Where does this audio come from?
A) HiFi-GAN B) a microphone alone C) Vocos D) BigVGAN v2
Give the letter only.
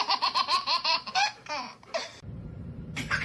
D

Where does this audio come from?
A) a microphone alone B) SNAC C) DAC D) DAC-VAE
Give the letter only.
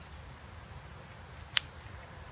A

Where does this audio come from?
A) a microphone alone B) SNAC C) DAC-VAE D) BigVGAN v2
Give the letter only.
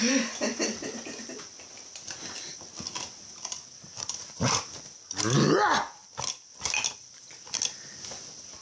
A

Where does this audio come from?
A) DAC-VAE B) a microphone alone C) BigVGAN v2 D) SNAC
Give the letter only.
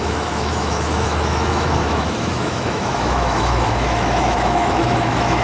A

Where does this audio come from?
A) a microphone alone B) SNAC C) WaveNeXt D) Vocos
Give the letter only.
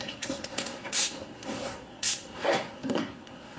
B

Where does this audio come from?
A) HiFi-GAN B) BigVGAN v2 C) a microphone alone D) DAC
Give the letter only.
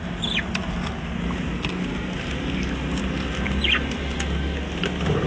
C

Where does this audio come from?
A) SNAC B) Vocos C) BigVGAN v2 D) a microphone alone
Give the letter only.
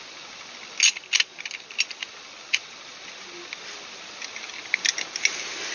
D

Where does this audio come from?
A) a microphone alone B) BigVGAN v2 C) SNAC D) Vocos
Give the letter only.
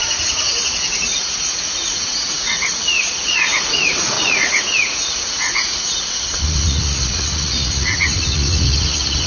D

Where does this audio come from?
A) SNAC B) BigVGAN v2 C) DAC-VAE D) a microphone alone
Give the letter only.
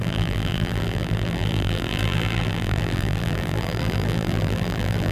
B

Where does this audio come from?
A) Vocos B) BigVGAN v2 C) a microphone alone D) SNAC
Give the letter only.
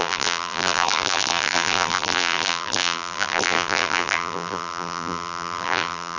B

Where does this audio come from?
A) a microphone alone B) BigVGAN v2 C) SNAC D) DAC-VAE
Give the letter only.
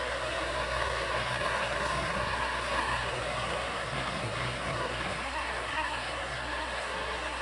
C